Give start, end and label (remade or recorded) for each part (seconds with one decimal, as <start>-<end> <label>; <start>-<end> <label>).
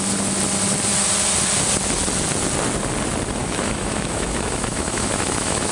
0.0-3.4 recorded; 3.4-5.7 remade